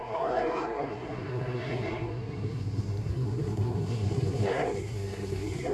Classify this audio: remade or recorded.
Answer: remade